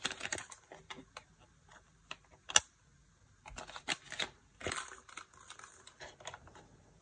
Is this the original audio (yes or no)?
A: yes